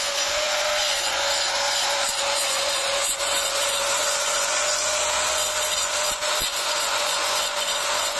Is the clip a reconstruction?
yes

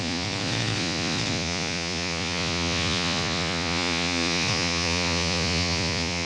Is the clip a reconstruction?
yes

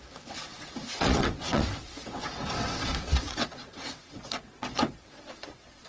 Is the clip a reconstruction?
yes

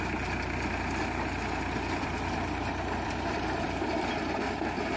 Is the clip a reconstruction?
yes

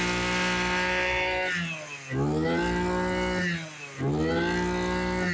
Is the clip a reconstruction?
no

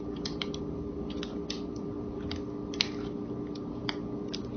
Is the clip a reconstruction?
no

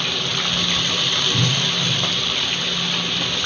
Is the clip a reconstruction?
yes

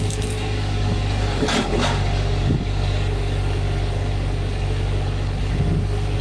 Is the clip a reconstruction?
yes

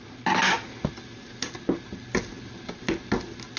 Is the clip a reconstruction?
no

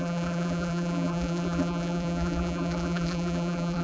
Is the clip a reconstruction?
yes